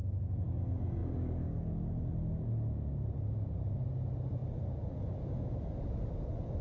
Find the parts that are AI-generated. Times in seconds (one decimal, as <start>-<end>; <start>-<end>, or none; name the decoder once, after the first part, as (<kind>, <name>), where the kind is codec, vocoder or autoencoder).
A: none